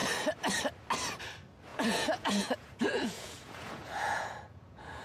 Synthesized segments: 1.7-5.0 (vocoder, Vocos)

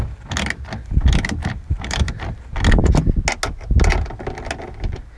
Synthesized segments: 1.4-2.3 (vocoder, BigVGAN v2)

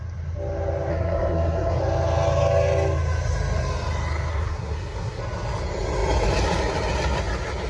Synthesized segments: 0.9-1.8 (codec, SNAC); 4.3-5.2

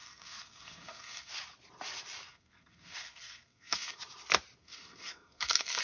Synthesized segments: 0.0-1.3 (codec, SNAC); 2.3-4.0; 4.6-5.8